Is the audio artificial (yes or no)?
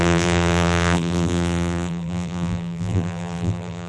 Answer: yes